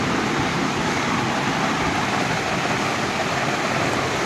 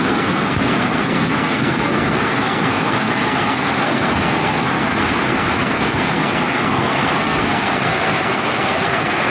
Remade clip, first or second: second